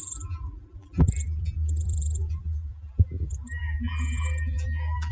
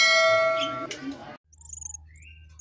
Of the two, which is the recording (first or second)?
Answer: second